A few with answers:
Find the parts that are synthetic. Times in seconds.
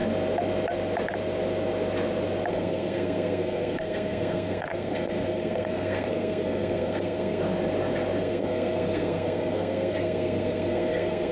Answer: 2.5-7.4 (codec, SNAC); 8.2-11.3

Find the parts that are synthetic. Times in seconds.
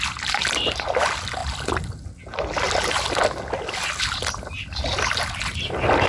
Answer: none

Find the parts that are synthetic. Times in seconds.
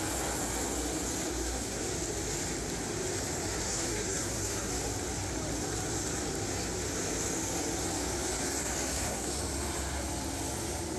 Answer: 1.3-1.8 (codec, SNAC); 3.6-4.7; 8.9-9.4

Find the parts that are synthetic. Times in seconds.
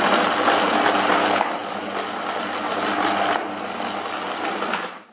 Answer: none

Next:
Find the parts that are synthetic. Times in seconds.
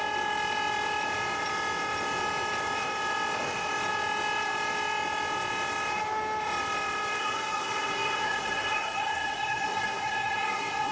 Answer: 7.2-10.9 (codec, SNAC)